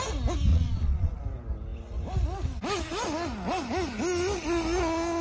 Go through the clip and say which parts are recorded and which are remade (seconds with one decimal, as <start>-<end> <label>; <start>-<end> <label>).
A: 0.0-0.5 recorded; 0.5-1.2 remade; 1.2-5.2 recorded